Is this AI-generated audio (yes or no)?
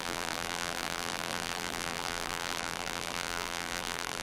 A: yes